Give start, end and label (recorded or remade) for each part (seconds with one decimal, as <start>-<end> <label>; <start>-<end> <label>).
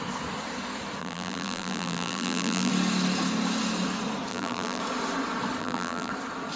0.0-1.0 recorded; 1.0-2.7 remade; 2.7-4.3 recorded; 4.3-4.8 remade; 4.8-5.6 recorded; 5.6-6.1 remade; 6.1-6.6 recorded